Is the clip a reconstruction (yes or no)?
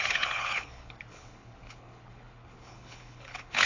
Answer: yes